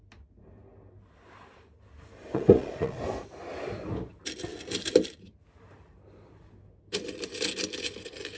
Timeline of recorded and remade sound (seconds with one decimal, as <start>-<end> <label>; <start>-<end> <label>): 0.0-2.3 recorded; 2.3-3.0 remade; 3.0-8.4 recorded